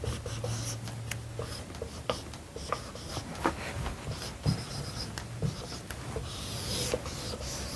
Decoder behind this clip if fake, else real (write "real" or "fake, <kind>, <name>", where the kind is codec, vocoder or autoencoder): real